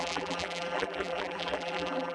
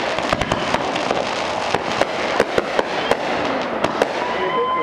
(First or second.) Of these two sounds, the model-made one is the first